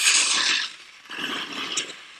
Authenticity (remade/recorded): recorded